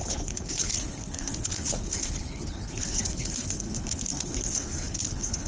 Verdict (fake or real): fake